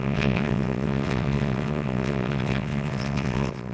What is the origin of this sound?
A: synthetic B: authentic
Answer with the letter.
A